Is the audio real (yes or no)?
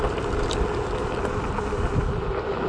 yes